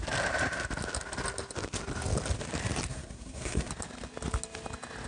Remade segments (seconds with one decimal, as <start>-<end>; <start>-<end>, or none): 2.9-3.7